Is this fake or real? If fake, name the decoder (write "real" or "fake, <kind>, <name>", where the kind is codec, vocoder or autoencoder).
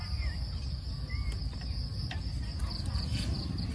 real